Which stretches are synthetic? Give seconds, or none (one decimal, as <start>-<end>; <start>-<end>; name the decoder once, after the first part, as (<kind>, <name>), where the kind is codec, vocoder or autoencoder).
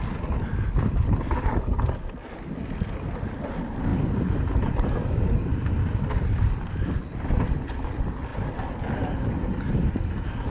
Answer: none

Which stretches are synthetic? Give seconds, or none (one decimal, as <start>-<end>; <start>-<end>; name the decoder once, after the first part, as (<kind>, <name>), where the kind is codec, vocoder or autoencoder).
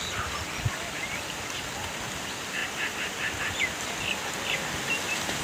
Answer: 2.6-3.4 (vocoder, BigVGAN v2)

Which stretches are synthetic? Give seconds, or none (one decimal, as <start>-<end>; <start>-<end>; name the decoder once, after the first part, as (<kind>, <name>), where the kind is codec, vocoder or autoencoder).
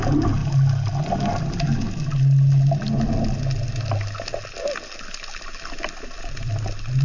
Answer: none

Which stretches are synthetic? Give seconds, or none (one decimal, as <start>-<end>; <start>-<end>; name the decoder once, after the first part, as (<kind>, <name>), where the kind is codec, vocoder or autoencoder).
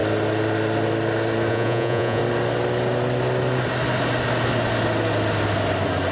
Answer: 1.5-2.2 (vocoder, Vocos)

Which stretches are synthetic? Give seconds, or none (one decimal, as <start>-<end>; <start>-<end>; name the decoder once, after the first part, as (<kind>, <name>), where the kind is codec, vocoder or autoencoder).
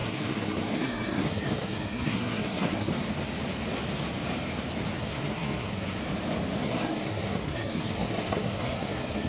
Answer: 0.0-2.9 (codec, SNAC); 5.0-6.0; 6.6-9.3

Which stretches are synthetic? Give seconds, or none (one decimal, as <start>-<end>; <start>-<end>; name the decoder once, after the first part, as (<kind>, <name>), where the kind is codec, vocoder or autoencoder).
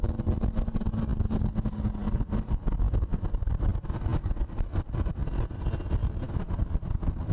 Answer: none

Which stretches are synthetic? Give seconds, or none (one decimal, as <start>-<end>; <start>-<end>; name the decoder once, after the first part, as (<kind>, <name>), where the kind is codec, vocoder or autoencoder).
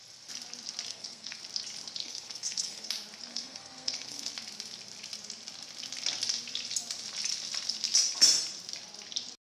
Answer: 0.9-1.4 (codec, SNAC); 2.0-2.9; 3.3-4.3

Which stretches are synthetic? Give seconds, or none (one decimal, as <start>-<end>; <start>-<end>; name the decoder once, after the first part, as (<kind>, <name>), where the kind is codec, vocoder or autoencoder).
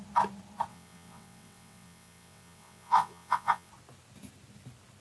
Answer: 0.7-3.7 (vocoder, WaveNeXt)